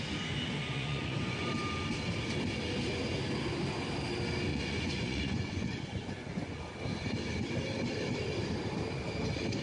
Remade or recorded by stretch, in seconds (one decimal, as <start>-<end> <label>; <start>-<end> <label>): 0.0-0.6 recorded; 0.6-1.5 remade; 1.5-4.5 recorded; 4.5-6.6 remade; 6.6-9.6 recorded